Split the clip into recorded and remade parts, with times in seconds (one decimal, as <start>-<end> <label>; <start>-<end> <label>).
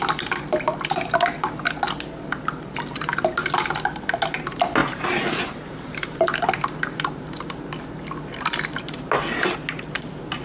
0.0-4.8 recorded; 4.8-6.3 remade; 6.3-10.4 recorded